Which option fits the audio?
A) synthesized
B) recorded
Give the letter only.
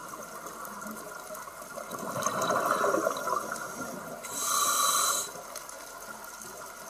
A